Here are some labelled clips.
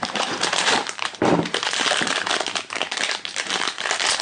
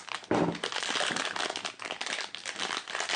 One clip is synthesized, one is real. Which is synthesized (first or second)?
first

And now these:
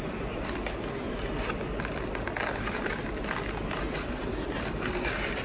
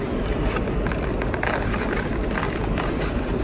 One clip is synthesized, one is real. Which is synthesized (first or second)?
second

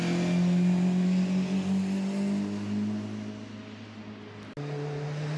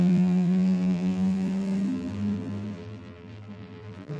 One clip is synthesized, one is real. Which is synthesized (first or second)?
second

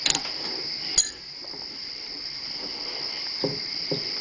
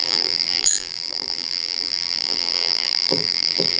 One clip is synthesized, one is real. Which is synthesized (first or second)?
second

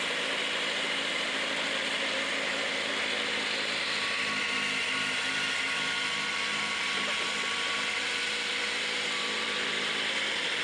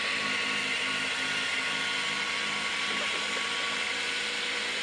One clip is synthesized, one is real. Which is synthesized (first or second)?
first